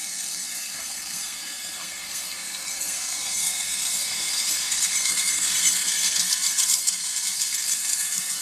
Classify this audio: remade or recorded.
remade